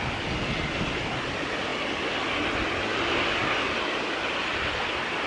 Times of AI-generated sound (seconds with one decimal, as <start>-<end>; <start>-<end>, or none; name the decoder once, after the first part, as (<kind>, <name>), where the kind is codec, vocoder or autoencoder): none